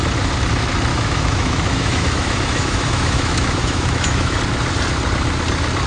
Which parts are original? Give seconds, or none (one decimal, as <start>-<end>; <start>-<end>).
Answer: 0.0-0.9; 4.4-5.9

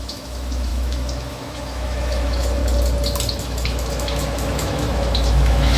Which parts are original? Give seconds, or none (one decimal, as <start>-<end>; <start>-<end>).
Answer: 2.6-3.4